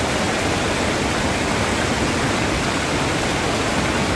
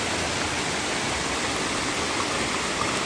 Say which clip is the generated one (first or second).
first